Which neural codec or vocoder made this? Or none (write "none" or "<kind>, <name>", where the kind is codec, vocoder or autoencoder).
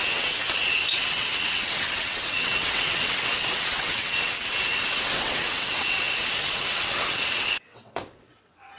vocoder, WaveNeXt